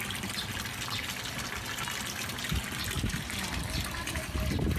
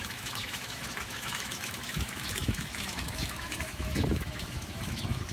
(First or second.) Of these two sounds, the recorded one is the first